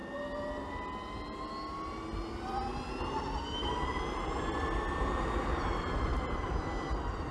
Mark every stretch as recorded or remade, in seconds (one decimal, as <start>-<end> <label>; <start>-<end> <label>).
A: 0.0-7.3 recorded